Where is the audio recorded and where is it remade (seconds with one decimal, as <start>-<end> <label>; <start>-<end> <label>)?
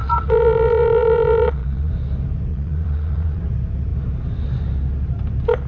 0.0-1.9 remade; 1.9-2.5 recorded; 2.5-3.4 remade; 3.4-5.7 recorded